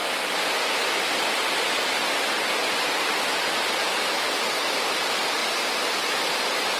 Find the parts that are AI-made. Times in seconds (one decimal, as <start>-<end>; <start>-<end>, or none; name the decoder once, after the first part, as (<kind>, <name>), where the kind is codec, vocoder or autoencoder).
none